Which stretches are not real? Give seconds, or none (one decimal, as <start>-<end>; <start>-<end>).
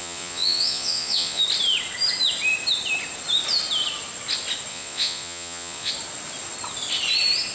0.0-1.4; 4.7-5.9